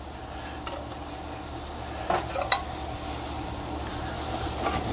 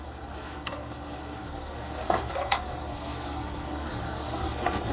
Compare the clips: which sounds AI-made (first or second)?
second